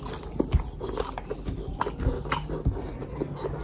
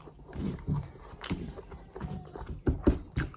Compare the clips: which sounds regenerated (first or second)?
second